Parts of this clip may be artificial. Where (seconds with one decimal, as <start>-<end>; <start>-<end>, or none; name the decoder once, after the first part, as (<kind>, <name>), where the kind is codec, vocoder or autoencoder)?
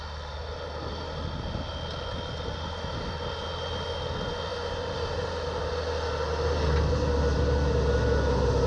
none